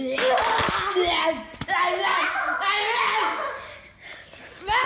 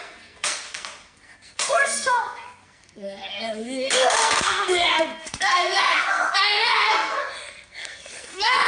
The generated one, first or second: second